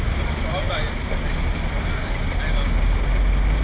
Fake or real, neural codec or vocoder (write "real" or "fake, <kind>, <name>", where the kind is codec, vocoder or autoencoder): real